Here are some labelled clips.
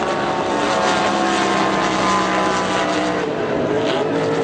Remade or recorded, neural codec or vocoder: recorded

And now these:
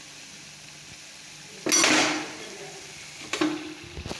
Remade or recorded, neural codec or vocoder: recorded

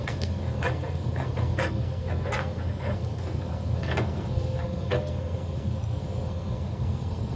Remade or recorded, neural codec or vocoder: remade, codec, SNAC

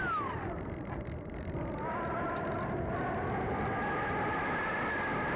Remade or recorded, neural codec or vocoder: recorded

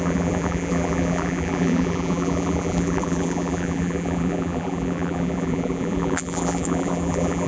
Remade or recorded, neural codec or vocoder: remade, vocoder, BigVGAN v2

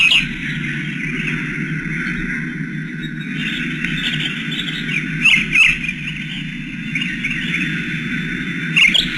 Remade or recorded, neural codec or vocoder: recorded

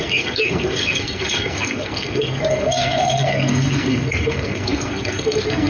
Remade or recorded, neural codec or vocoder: remade, codec, SNAC